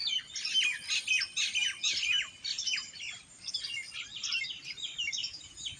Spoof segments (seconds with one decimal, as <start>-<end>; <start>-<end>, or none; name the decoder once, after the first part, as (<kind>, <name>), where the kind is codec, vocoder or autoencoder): 5.2-5.8 (vocoder, Vocos)